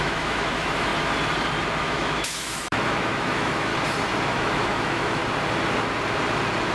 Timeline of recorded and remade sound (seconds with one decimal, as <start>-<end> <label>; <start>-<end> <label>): 0.0-0.9 remade; 0.9-1.8 recorded; 1.8-3.7 remade; 3.7-4.3 recorded; 4.3-5.2 remade; 5.2-6.7 recorded